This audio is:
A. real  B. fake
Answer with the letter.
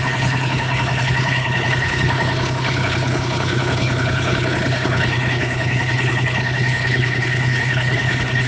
B